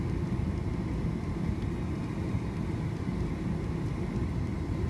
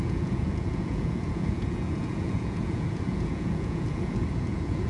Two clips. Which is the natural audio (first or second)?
first